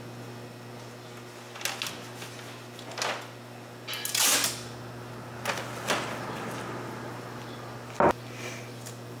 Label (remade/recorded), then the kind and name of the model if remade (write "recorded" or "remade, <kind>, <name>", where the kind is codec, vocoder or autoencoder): recorded